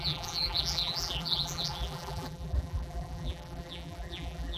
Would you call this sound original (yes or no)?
no